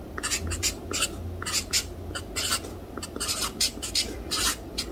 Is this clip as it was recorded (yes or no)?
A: yes